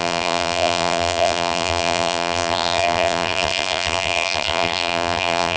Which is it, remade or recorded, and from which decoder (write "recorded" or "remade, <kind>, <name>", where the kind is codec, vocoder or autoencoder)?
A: remade, vocoder, BigVGAN v2